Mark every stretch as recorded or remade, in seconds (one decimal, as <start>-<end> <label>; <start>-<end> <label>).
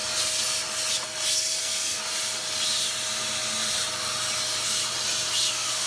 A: 0.0-1.6 recorded; 1.6-2.0 remade; 2.0-5.5 recorded; 5.5-5.9 remade